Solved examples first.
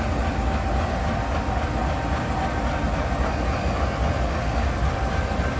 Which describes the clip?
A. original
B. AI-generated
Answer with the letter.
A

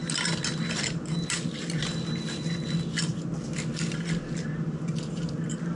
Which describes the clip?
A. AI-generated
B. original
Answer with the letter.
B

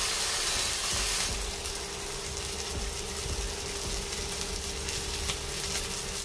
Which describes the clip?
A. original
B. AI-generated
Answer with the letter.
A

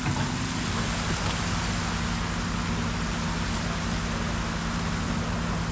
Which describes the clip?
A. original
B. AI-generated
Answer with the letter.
A